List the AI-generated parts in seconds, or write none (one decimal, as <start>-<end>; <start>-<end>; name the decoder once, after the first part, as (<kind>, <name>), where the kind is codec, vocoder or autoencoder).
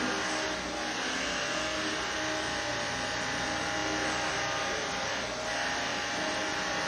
none